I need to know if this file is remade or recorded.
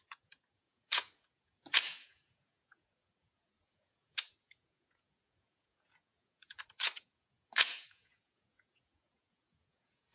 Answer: remade